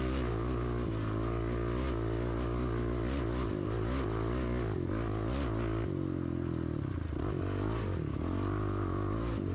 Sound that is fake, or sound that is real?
real